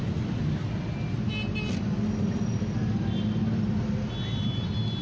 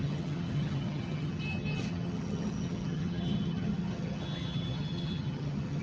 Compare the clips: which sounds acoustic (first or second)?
first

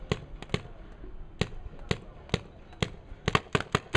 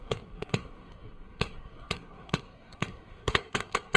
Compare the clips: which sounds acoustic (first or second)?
first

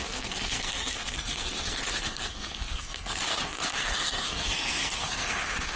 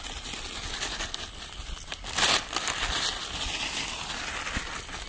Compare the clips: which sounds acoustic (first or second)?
second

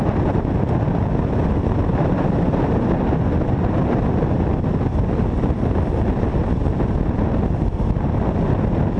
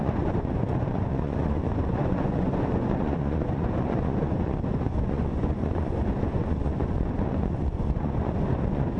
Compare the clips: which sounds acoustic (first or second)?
first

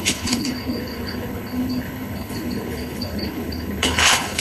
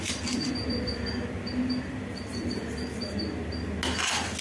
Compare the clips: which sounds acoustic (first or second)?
second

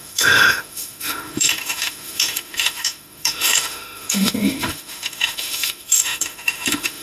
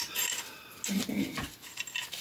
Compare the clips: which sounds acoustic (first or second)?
second